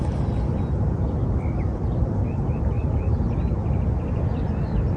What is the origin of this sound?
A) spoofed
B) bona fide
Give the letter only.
B